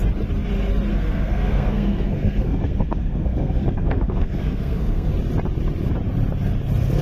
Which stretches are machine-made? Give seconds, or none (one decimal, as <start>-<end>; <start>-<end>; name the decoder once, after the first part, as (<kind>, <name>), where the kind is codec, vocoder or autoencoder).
0.9-5.1 (codec, SNAC)